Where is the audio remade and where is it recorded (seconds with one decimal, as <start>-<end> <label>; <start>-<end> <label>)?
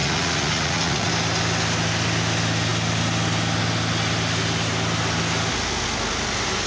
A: 0.0-1.1 remade; 1.1-6.7 recorded